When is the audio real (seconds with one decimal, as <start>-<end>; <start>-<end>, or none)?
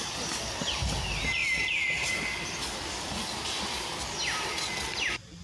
0.0-5.4